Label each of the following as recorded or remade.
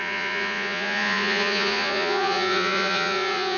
remade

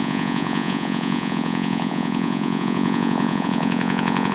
remade